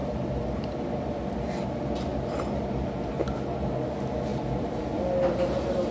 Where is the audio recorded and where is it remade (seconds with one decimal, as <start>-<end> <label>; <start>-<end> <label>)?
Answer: 0.0-1.4 remade; 1.4-4.3 recorded; 4.3-4.8 remade; 4.8-5.9 recorded